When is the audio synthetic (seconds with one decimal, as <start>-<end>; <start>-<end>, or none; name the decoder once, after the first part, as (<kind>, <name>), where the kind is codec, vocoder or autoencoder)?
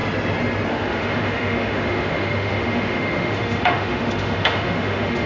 0.7-5.3 (autoencoder, DAC-VAE)